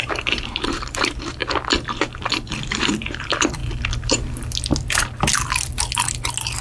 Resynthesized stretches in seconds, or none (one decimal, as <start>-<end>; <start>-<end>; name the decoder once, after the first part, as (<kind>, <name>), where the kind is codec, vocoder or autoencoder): 0.0-1.4 (vocoder, BigVGAN v2); 2.8-3.6